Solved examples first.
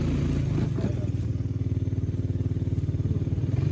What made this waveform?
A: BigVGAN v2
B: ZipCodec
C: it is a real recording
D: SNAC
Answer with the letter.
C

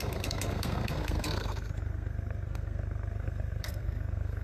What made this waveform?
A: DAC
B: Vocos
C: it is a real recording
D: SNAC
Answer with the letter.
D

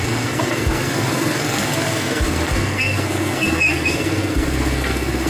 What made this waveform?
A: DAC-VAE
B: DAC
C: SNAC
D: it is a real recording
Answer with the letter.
C